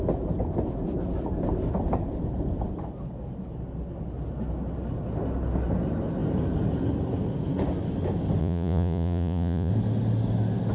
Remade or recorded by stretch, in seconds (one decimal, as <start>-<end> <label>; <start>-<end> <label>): 0.0-8.4 recorded; 8.4-9.7 remade; 9.7-10.7 recorded